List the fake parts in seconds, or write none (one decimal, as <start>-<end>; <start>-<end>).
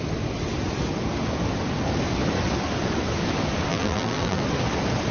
3.7-4.4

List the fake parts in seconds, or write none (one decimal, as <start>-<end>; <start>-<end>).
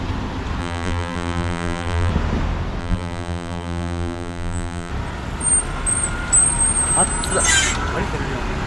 0.6-2.1; 2.8-4.9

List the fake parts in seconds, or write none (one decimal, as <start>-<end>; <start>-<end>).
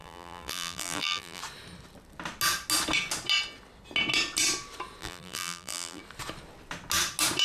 0.0-1.4; 5.0-6.0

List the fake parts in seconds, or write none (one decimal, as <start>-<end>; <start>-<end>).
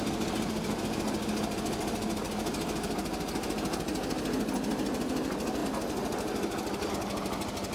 none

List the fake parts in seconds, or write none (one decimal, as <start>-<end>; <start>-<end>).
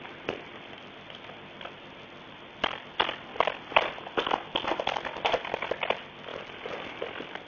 6.3-7.1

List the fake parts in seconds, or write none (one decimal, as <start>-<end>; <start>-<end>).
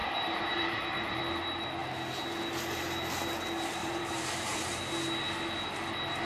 0.0-1.2; 3.8-4.8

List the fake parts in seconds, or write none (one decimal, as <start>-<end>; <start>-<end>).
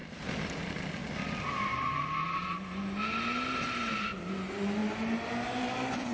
0.0-0.6; 4.8-6.1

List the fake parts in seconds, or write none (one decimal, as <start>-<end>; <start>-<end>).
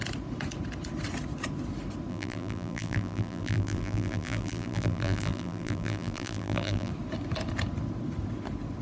2.1-6.9